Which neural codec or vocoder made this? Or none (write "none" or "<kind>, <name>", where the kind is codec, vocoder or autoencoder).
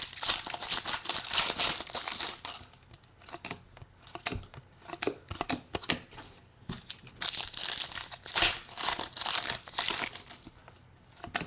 none